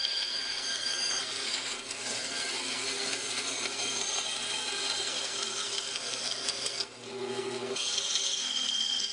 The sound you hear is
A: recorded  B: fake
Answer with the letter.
B